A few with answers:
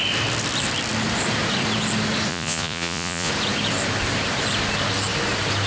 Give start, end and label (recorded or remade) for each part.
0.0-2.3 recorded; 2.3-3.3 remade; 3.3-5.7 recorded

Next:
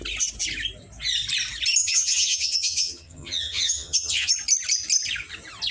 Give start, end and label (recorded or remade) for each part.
0.0-1.8 recorded; 1.8-4.3 remade; 4.3-5.7 recorded

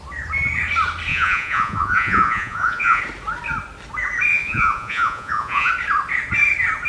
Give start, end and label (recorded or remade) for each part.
0.0-1.1 recorded; 1.1-3.0 remade; 3.0-4.3 recorded; 4.3-5.7 remade; 5.7-6.9 recorded

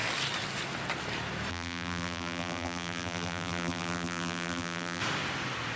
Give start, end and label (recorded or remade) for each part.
0.0-1.5 recorded; 1.5-5.0 remade; 5.0-5.8 recorded

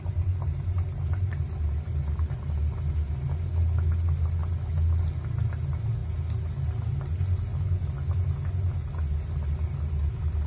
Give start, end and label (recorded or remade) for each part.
0.0-10.5 recorded

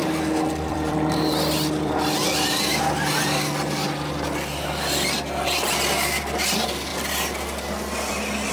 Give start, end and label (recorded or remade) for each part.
0.0-4.1 remade; 4.1-8.5 recorded